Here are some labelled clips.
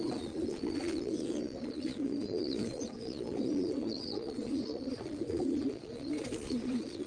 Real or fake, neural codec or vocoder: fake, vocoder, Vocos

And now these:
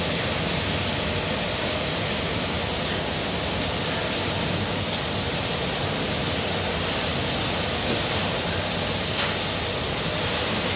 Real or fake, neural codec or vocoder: real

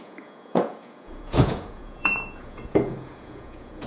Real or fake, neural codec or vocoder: fake, vocoder, Vocos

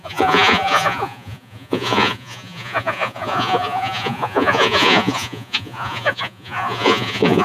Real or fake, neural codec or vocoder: fake, vocoder, Vocos